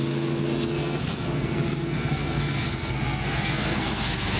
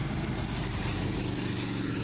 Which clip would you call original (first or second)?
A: second